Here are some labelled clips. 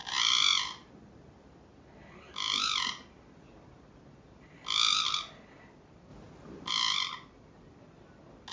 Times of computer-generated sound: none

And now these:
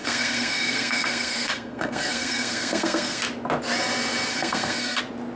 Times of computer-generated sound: 0.0-3.2 (codec, SNAC); 4.3-5.0